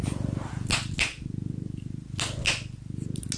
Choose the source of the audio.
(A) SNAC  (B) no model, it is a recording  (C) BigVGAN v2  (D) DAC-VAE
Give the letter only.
B